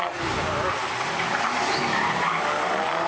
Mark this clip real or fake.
real